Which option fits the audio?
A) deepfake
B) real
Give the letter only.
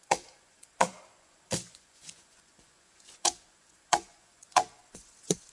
A